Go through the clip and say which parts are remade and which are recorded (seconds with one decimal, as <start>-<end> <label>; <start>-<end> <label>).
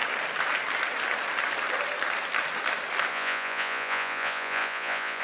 0.0-3.1 recorded; 3.1-5.2 remade